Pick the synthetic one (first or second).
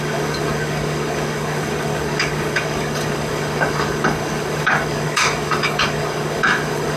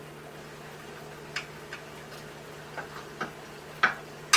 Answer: first